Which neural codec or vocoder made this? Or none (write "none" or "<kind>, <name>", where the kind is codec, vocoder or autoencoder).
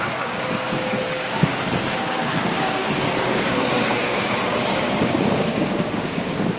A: codec, DAC